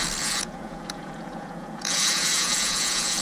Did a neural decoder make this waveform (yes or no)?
yes